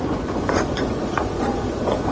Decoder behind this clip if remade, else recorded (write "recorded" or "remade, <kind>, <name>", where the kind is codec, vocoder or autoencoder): remade, vocoder, Vocos